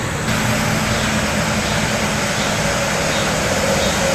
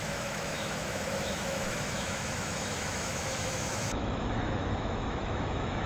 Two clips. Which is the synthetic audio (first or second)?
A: second